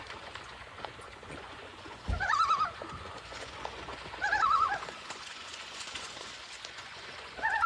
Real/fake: fake